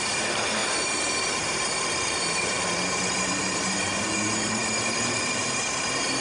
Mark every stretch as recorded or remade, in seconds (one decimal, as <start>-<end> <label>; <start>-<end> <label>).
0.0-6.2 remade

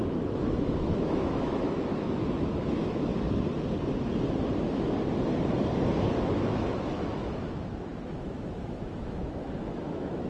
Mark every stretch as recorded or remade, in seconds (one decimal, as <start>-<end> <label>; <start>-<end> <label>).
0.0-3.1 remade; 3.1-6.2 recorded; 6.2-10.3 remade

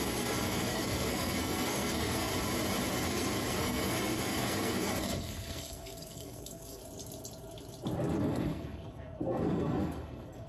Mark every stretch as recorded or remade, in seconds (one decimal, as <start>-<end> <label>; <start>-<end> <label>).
0.0-2.3 remade; 2.3-2.9 recorded; 2.9-6.8 remade; 6.8-8.2 recorded; 8.2-10.5 remade